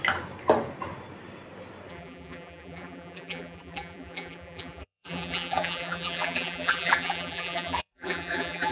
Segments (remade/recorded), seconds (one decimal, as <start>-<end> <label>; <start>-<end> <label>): 0.0-1.9 recorded; 1.9-8.7 remade